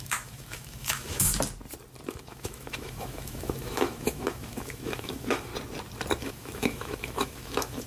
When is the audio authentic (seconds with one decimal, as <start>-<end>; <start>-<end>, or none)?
1.3-2.2; 5.5-6.2